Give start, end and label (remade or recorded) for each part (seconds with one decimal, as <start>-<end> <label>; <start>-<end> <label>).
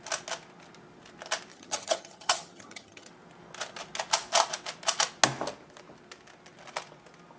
0.0-1.5 recorded; 1.5-3.1 remade; 3.1-7.4 recorded